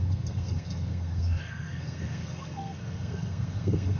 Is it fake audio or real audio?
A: fake